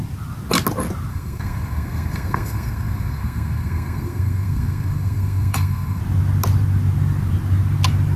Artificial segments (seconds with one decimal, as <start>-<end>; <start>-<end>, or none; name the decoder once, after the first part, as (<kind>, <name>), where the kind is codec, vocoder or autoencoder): 1.1-6.0 (codec, SNAC)